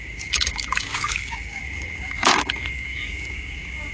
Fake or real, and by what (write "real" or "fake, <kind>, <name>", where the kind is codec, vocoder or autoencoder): fake, codec, DAC